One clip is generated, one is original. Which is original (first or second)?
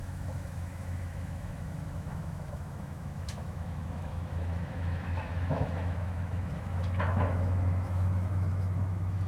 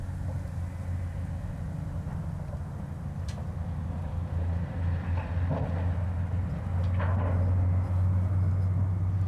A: second